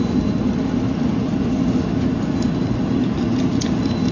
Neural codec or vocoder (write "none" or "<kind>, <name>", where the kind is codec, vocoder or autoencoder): none